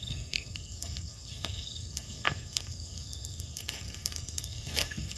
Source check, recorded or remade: remade